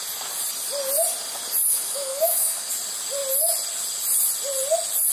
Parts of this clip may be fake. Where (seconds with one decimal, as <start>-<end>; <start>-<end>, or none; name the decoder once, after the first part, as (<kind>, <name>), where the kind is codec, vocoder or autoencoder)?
1.7-2.7 (autoencoder, DAC-VAE)